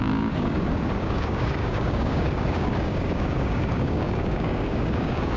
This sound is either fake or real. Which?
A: fake